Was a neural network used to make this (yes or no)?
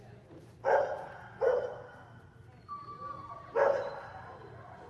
no